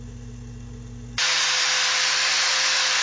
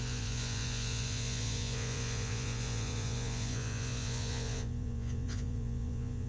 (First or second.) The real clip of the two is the first